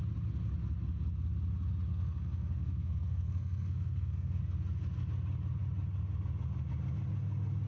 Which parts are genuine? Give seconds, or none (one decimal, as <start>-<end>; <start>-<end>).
0.0-1.9; 4.4-7.7

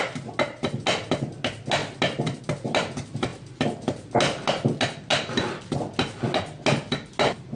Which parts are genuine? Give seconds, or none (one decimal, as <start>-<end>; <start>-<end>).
0.0-7.6

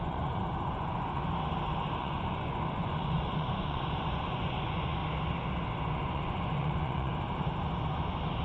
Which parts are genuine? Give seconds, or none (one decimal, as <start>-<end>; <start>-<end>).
1.2-2.0; 5.0-5.9; 7.1-8.4

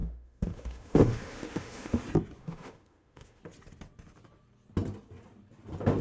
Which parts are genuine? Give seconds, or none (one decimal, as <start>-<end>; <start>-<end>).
2.0-2.4; 3.4-6.0